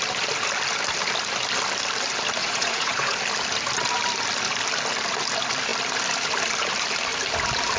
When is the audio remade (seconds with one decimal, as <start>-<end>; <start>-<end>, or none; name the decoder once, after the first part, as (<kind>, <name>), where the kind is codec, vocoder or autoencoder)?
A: 2.4-3.2 (vocoder, Vocos)